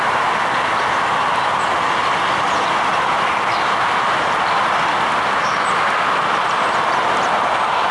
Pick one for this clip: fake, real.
real